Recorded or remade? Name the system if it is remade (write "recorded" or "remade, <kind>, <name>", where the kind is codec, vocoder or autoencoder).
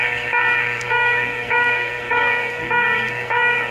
remade, codec, SNAC